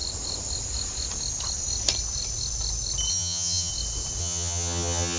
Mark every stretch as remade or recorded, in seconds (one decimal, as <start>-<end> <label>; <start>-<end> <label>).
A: 0.0-3.1 recorded; 3.1-3.7 remade; 3.7-4.2 recorded; 4.2-5.2 remade

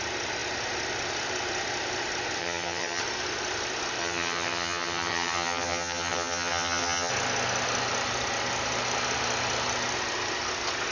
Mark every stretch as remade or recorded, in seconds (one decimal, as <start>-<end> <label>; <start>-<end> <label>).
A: 0.0-2.4 recorded; 2.4-3.0 remade; 3.0-4.0 recorded; 4.0-7.1 remade; 7.1-10.9 recorded

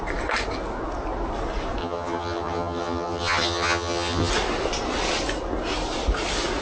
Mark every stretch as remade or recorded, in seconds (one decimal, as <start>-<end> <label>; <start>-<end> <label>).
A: 0.0-1.8 recorded; 1.8-4.3 remade; 4.3-6.6 recorded

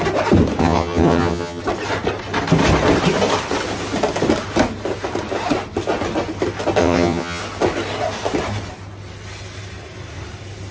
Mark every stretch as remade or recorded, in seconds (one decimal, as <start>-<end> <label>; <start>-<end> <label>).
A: 0.0-0.6 recorded; 0.6-1.6 remade; 1.6-6.8 recorded; 6.8-7.4 remade; 7.4-10.7 recorded

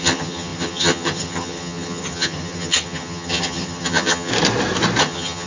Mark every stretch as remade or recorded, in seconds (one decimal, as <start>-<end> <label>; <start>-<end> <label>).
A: 0.0-4.3 remade; 4.3-5.0 recorded; 5.0-5.5 remade

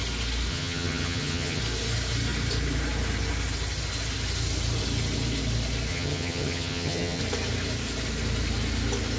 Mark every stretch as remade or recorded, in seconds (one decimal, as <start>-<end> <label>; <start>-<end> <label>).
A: 0.0-0.5 recorded; 0.5-1.6 remade; 1.6-5.9 recorded; 5.9-7.2 remade; 7.2-9.2 recorded

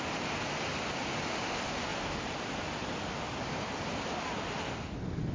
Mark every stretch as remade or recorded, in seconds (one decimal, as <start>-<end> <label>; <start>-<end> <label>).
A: 0.0-5.3 recorded